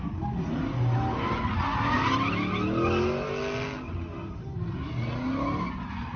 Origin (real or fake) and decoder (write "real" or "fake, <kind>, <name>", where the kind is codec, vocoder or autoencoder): real